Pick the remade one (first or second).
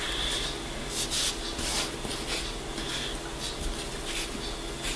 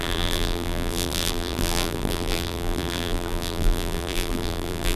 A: second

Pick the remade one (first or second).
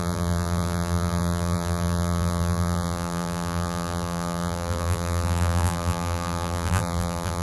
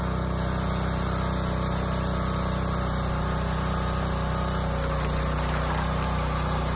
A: first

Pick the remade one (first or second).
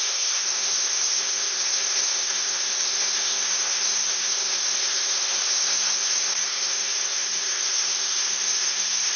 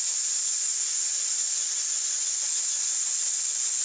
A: first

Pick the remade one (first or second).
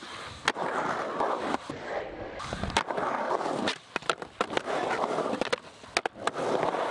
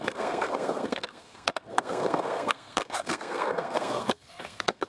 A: second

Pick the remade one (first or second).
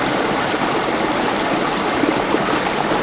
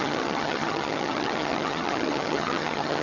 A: second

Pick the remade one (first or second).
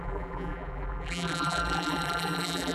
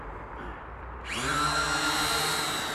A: first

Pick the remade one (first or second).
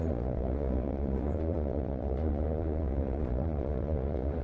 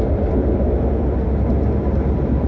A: first